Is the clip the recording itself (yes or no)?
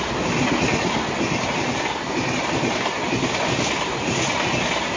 yes